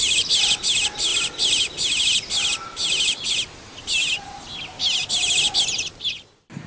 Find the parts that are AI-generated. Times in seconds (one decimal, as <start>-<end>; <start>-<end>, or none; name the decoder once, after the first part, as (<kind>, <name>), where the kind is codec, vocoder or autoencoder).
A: none